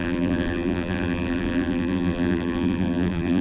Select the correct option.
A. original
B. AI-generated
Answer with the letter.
B